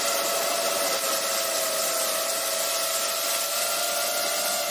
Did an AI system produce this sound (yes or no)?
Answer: no